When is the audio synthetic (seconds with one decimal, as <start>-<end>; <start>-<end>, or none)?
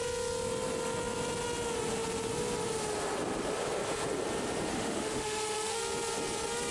4.7-5.8